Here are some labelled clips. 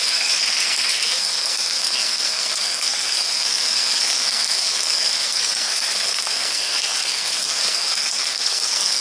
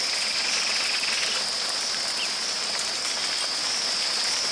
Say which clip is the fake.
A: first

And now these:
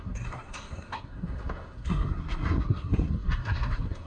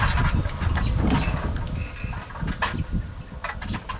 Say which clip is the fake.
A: first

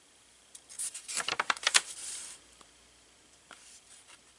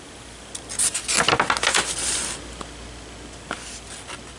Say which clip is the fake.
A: first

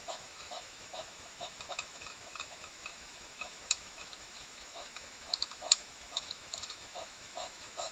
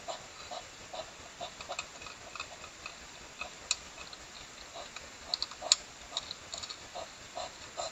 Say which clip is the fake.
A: first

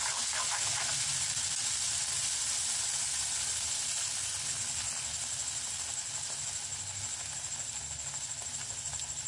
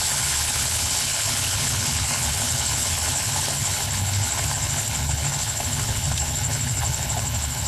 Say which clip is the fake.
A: second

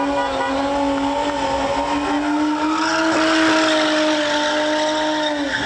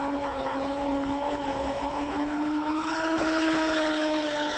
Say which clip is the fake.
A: second